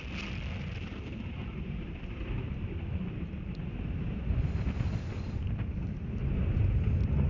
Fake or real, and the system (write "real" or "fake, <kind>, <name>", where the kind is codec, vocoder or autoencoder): real